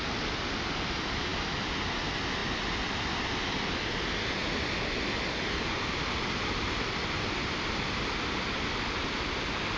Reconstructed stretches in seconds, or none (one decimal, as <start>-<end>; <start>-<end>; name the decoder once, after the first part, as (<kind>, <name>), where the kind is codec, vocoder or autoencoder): none